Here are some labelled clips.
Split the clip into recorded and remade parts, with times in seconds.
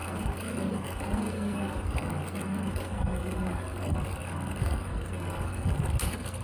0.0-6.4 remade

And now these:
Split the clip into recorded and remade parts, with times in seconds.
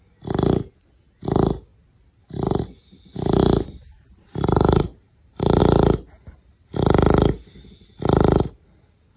0.0-1.7 recorded; 1.7-5.6 remade; 5.6-9.2 recorded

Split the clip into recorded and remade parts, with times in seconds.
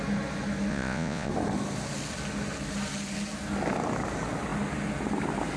0.0-0.7 recorded; 0.7-1.3 remade; 1.3-5.6 recorded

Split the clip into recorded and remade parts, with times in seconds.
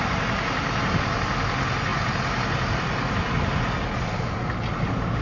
0.0-5.2 recorded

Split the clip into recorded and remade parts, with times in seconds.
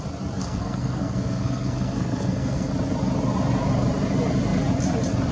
0.0-0.4 recorded; 0.4-2.7 remade; 2.7-5.3 recorded